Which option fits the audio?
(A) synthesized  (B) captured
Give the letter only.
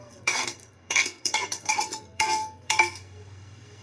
A